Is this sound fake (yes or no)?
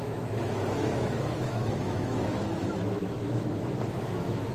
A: yes